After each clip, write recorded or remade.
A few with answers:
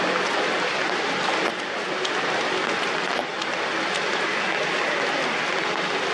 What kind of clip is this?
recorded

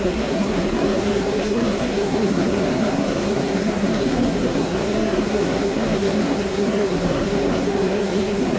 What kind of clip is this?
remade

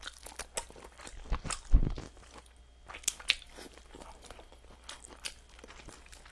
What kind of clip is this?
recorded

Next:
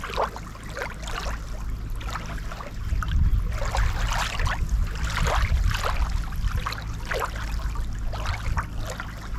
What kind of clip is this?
recorded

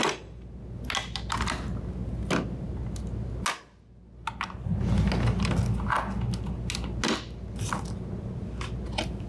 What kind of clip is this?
recorded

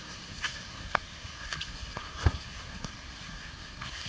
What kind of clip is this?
remade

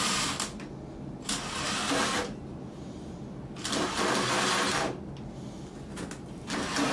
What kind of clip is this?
recorded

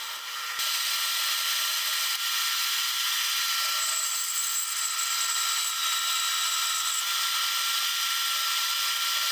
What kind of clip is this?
recorded